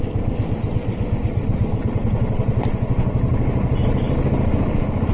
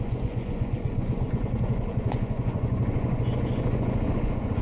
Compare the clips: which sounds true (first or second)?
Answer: first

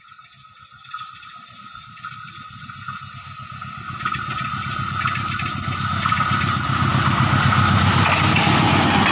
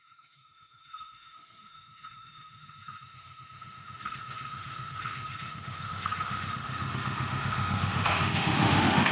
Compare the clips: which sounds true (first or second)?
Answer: first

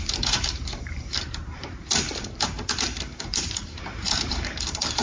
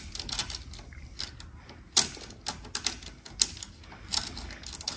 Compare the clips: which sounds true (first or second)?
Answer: second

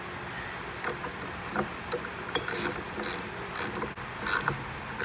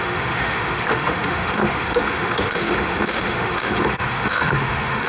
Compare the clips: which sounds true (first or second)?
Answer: first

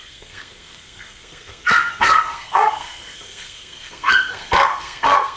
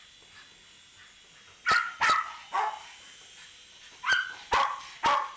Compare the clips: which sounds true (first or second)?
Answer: second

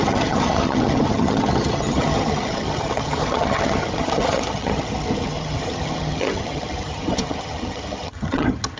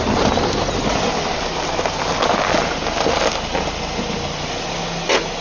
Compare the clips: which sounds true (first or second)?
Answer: second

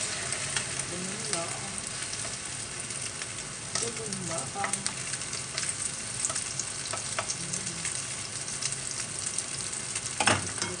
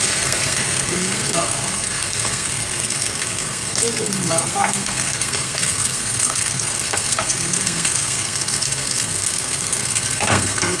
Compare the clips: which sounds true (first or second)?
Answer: first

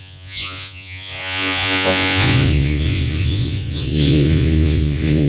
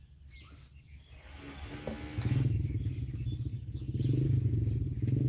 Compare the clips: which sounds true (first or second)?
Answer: second